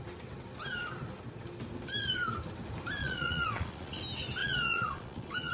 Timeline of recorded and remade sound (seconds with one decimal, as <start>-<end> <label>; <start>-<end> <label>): 0.0-3.0 recorded; 3.0-4.0 remade; 4.0-4.4 recorded; 4.4-5.5 remade